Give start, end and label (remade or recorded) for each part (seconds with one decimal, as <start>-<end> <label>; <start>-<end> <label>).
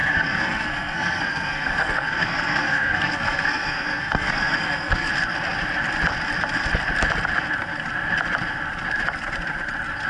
0.0-5.1 remade; 5.1-10.1 recorded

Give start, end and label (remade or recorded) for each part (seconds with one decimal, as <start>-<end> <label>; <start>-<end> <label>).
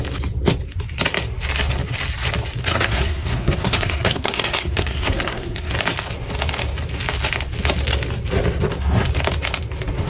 0.0-2.6 recorded; 2.6-5.7 remade; 5.7-10.1 recorded